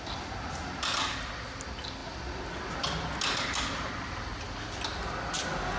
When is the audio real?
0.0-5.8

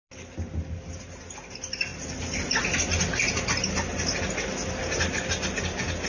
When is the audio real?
0.0-6.1

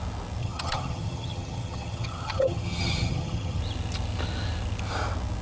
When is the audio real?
0.0-0.4; 3.6-5.4

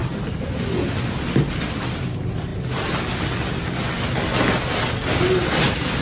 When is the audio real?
0.0-6.0

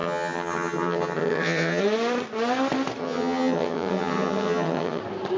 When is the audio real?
1.8-3.0; 5.0-5.4